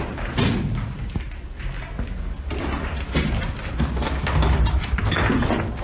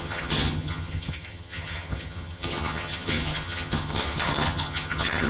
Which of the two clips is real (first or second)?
first